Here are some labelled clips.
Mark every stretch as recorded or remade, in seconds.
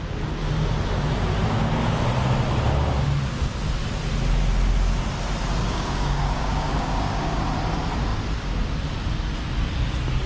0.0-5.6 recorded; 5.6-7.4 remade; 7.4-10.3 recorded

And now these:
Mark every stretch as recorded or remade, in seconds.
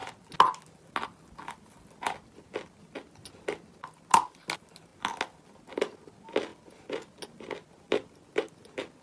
0.0-9.0 recorded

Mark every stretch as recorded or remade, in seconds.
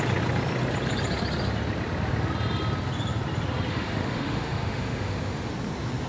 0.0-3.7 recorded; 3.7-5.5 remade; 5.5-6.1 recorded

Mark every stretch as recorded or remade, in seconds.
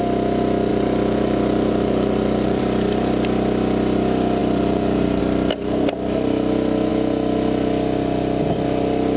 0.0-0.7 recorded; 0.7-2.6 remade; 2.6-4.4 recorded; 4.4-5.2 remade; 5.2-9.2 recorded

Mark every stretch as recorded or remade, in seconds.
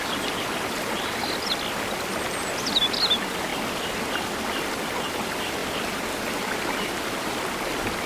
0.0-5.6 recorded; 5.6-7.4 remade; 7.4-8.1 recorded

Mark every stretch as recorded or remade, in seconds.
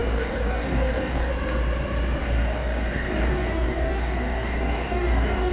0.0-1.3 remade; 1.3-2.2 recorded; 2.2-5.5 remade